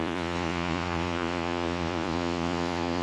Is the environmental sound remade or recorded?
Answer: remade